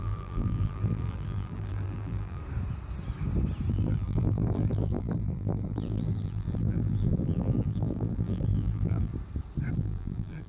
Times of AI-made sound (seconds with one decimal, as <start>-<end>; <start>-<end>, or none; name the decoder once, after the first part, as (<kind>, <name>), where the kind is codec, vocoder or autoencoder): 0.0-2.4 (vocoder, BigVGAN v2); 3.7-9.1; 9.7-10.5